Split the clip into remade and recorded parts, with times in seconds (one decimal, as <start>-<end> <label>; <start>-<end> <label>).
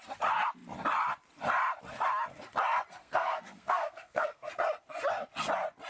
0.0-3.0 recorded; 3.0-4.5 remade; 4.5-5.9 recorded